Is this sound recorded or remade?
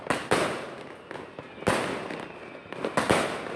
recorded